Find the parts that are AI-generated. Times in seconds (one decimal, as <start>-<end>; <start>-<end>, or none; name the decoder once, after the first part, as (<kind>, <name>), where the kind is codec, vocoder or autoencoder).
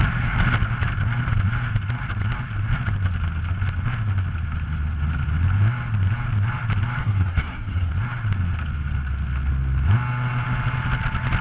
7.0-7.9 (codec, SNAC)